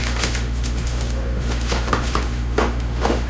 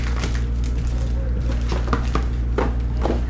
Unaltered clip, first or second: second